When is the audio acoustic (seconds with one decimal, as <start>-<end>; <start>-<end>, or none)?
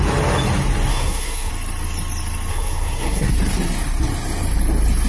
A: 0.0-0.9; 1.5-2.5; 3.3-5.1